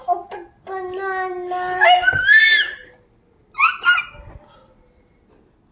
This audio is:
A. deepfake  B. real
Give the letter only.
B